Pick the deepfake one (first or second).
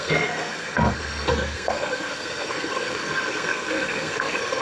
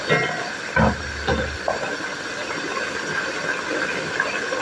first